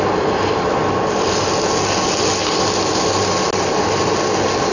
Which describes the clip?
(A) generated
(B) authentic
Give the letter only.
B